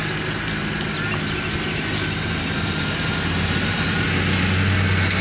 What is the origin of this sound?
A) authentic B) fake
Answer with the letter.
A